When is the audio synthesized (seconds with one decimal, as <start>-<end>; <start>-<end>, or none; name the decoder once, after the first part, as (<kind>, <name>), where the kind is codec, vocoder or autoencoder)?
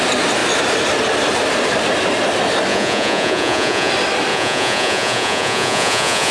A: 2.7-3.9 (vocoder, Vocos); 4.3-6.3